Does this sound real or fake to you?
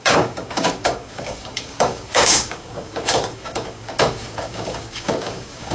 fake